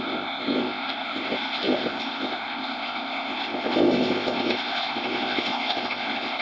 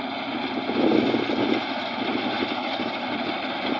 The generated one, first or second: first